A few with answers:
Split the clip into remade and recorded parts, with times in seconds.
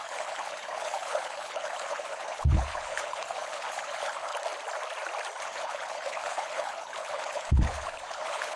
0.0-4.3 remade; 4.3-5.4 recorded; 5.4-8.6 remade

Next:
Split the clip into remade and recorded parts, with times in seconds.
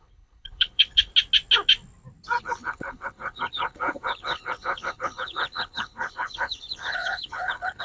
0.0-1.1 remade; 1.1-2.4 recorded; 2.4-7.8 remade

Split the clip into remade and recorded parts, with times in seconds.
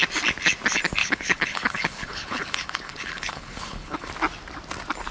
0.0-1.0 recorded; 1.0-4.1 remade; 4.1-5.1 recorded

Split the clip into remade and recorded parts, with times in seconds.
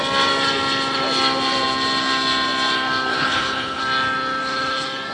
0.0-3.1 recorded; 3.1-3.8 remade; 3.8-5.1 recorded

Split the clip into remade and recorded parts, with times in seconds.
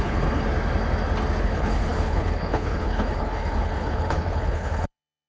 0.0-0.4 remade; 0.4-1.4 recorded; 1.4-5.3 remade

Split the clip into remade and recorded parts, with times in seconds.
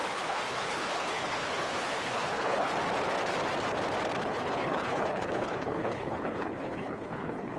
0.0-2.7 remade; 2.7-4.2 recorded; 4.2-7.6 remade